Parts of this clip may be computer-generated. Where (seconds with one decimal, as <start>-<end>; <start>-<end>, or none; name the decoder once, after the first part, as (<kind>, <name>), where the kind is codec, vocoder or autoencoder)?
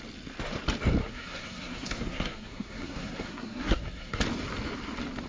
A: 1.0-4.2 (codec, SNAC)